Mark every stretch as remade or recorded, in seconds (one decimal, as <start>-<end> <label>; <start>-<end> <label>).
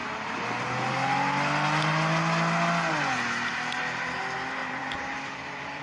0.0-4.6 recorded; 4.6-5.8 remade